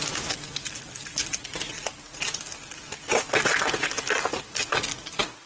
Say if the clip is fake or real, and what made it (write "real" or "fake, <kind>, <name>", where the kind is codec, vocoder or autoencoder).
fake, vocoder, BigVGAN v2